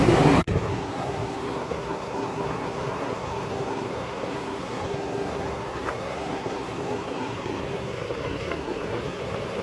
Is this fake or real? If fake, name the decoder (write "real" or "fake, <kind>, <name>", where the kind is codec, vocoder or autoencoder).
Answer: fake, codec, SNAC